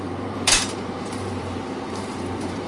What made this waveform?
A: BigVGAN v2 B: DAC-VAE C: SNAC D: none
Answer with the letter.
A